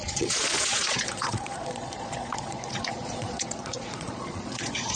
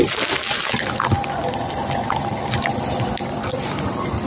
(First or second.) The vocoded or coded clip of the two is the first